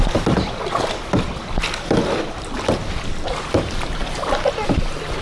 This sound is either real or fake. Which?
real